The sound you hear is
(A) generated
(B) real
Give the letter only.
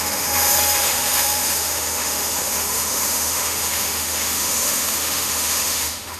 A